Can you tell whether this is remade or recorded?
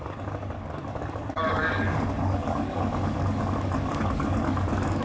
remade